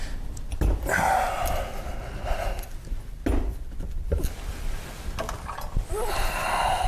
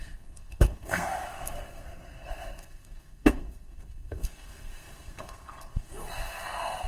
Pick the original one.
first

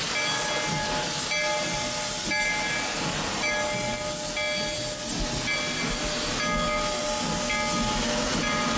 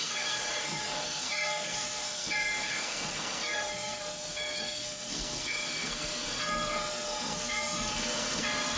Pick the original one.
first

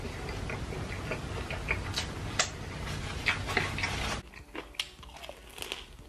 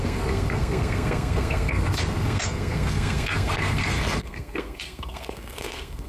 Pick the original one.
first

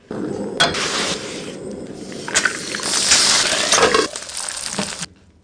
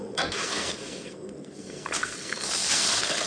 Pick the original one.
first